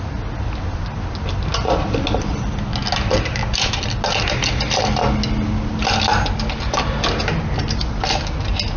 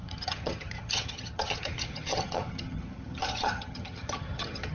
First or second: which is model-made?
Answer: second